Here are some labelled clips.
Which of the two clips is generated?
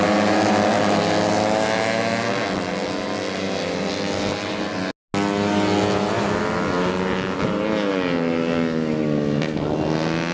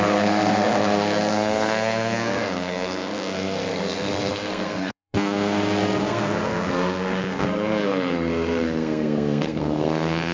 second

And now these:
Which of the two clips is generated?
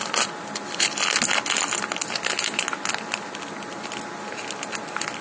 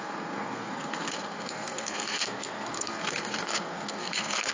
second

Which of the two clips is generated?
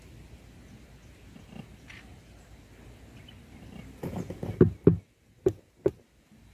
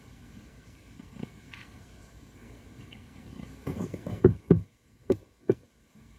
second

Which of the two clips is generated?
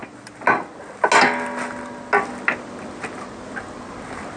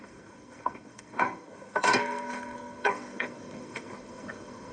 second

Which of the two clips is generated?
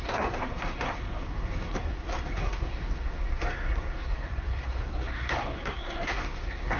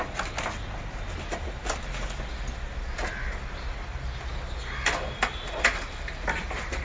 first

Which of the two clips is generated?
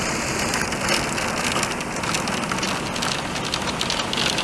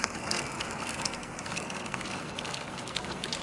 second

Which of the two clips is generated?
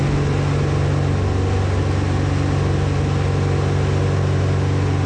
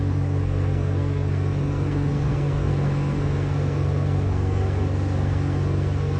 second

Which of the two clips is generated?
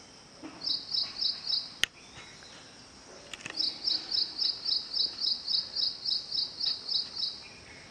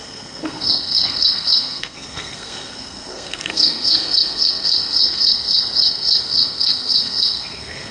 second